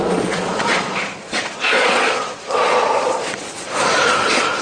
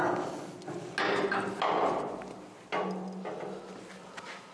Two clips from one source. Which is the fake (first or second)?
first